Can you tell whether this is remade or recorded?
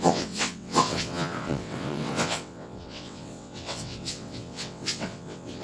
remade